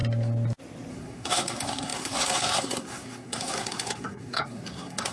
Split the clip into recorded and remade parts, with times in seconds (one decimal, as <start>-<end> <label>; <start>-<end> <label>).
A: 0.0-0.9 recorded; 0.9-5.1 remade